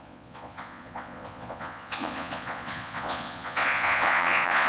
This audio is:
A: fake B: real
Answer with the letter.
A